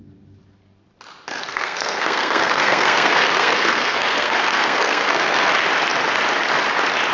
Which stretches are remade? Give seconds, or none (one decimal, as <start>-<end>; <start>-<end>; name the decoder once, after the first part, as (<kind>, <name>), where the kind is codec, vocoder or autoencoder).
1.5-5.5 (codec, SNAC)